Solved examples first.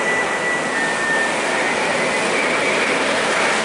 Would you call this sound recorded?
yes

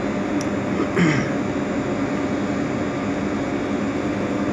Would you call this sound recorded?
yes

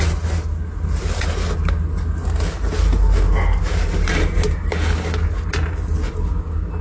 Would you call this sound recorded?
yes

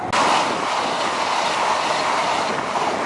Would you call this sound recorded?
yes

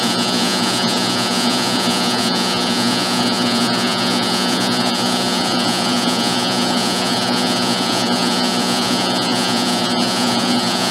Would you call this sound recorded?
no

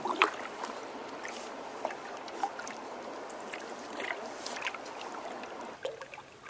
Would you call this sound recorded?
yes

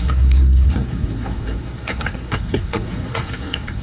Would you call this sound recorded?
no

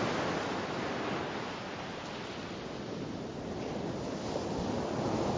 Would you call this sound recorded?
no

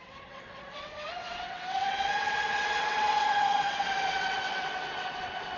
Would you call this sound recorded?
no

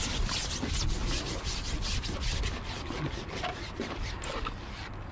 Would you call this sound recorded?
yes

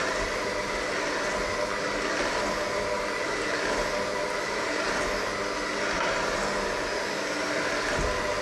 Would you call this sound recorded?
yes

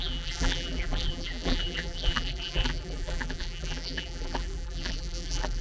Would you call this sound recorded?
no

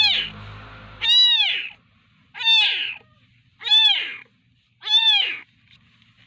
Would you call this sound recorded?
yes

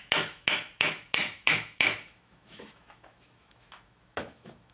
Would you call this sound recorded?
no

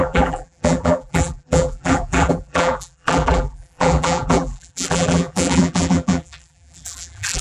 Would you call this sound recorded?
no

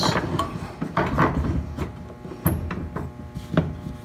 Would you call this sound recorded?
yes